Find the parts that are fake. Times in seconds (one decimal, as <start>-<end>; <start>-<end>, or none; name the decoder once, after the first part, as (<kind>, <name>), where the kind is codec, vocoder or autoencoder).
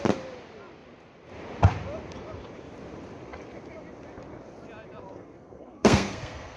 5.1-6.6 (codec, SNAC)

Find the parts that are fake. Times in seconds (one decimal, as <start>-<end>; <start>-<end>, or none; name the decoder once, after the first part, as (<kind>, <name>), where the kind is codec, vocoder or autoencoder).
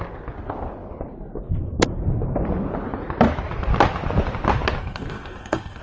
4.8-5.8 (codec, SNAC)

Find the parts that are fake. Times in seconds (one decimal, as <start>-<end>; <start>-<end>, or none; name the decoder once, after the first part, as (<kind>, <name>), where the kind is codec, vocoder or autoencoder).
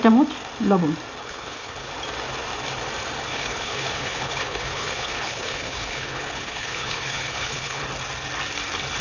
1.2-1.9 (codec, HILCodec); 3.3-7.8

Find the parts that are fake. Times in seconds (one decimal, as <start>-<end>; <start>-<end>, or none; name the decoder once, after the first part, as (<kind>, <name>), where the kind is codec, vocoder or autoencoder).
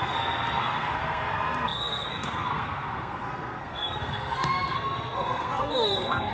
0.0-6.3 (codec, SNAC)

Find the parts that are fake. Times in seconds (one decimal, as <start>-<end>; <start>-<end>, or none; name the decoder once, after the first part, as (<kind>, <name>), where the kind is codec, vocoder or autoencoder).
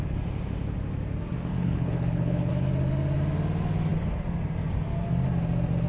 1.5-2.5 (codec, HILCodec)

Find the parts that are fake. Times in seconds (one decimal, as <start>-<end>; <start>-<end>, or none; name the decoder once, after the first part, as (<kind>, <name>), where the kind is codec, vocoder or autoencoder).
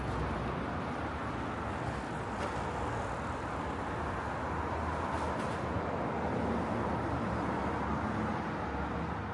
none